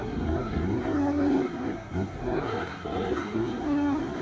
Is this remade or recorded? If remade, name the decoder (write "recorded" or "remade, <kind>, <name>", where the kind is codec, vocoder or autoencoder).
remade, codec, SNAC